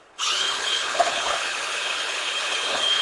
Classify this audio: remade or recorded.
remade